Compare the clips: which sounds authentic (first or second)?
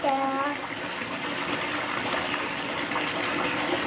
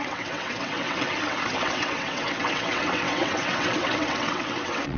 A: first